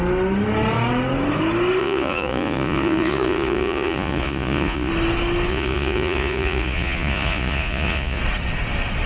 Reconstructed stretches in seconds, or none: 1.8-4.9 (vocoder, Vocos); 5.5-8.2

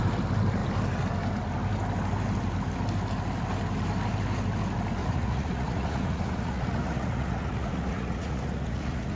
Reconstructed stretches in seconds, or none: 5.0-9.2 (vocoder, Vocos)

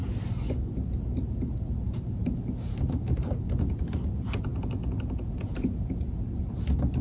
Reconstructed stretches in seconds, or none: 4.5-6.4 (vocoder, Vocos)

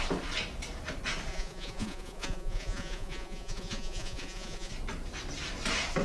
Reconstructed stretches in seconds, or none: 1.3-4.7 (vocoder, Vocos)

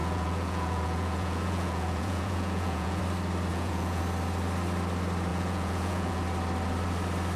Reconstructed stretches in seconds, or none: 0.0-3.0 (vocoder, Vocos); 3.5-4.0; 5.3-6.2

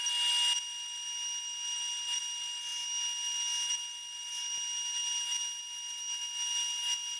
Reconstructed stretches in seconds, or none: none